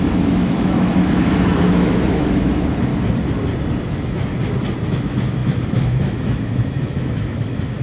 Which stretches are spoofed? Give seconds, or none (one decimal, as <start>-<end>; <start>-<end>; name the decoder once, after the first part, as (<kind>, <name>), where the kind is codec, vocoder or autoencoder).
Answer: 0.0-2.9 (autoencoder, DAC-VAE); 3.8-4.3; 4.9-7.8